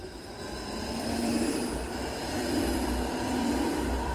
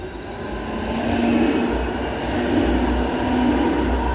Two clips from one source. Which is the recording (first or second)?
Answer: second